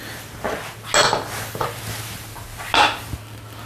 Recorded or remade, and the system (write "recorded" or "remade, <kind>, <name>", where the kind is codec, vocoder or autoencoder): recorded